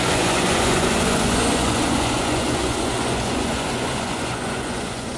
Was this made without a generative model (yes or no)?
no